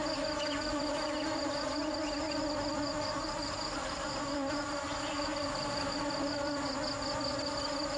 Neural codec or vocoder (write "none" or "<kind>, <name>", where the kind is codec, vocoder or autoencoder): none